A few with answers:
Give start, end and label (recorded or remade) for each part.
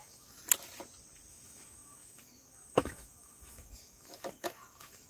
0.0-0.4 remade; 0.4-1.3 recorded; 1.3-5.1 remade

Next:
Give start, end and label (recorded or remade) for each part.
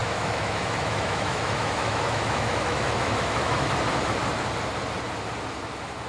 0.0-3.7 remade; 3.7-6.1 recorded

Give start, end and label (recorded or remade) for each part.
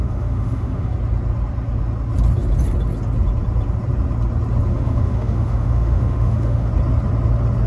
0.0-0.9 remade; 0.9-4.7 recorded; 4.7-6.7 remade; 6.7-7.7 recorded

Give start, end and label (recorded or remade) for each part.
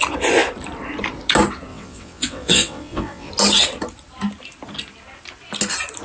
0.0-1.7 recorded; 1.7-3.3 remade; 3.3-6.0 recorded